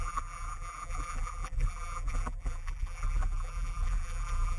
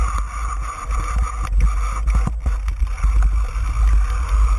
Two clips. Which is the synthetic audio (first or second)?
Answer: first